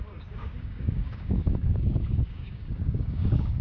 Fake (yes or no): yes